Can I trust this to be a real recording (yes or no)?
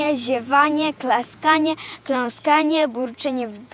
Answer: no